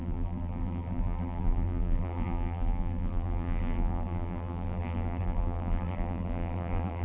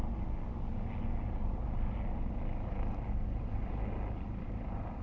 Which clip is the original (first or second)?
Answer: second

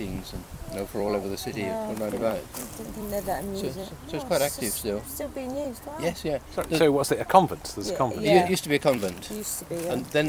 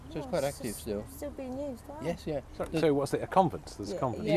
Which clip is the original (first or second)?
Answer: second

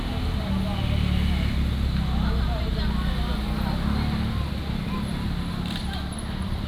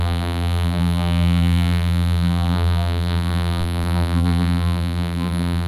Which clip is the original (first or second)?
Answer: first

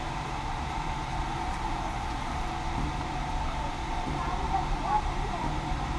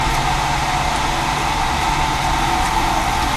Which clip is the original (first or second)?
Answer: second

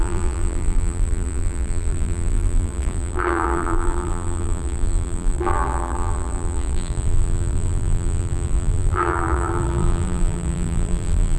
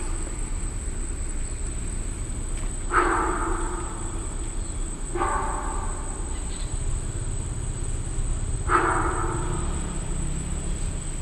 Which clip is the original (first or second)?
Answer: second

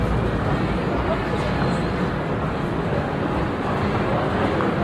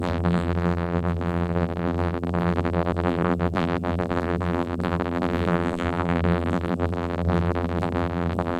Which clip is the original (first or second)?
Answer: first